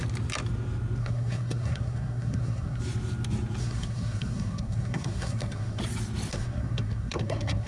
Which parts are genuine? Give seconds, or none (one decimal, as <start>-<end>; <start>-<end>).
0.0-1.0; 2.8-3.6; 5.8-6.3